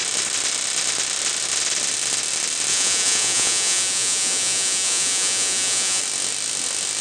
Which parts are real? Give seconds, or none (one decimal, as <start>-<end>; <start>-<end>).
0.0-2.7; 6.0-7.0